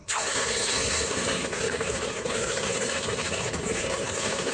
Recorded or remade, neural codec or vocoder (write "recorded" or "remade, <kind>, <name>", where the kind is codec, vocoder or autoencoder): remade, codec, SNAC